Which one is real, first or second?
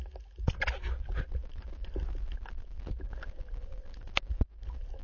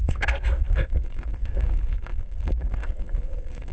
first